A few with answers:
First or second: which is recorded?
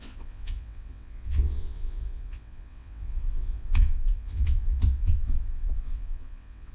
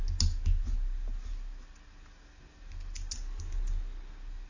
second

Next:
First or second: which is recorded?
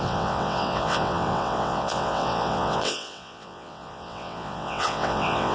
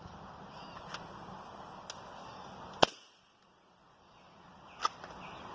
second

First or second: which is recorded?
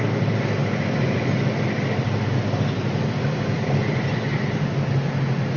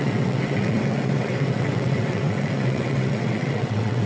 first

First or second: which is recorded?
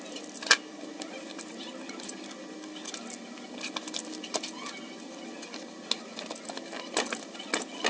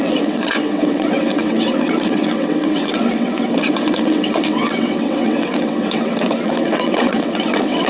first